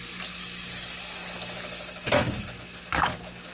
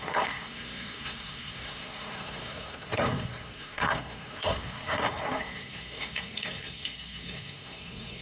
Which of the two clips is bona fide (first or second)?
first